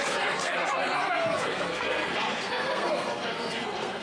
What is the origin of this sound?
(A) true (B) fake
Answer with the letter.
B